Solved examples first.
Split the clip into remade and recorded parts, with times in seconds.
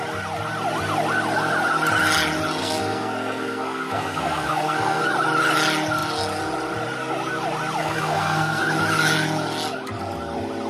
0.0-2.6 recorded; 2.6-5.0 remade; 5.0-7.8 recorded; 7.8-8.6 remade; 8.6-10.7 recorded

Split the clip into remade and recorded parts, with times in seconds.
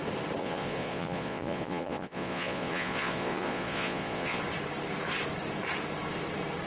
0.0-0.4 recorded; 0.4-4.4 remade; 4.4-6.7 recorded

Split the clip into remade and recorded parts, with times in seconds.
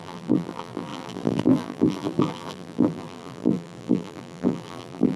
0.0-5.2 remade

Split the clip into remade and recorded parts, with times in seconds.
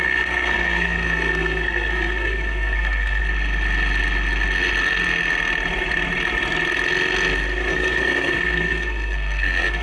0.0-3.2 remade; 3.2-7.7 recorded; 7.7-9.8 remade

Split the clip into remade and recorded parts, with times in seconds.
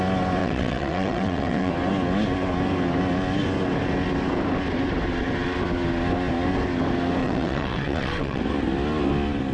0.0-0.4 recorded; 0.4-1.7 remade; 1.7-7.2 recorded; 7.2-8.4 remade; 8.4-9.5 recorded